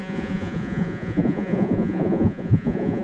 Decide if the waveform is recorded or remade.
remade